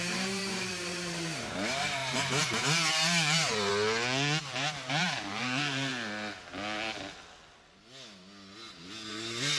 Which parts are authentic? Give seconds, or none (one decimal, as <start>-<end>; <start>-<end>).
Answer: 3.7-4.4; 5.9-9.1